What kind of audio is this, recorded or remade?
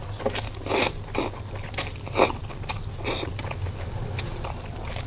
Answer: recorded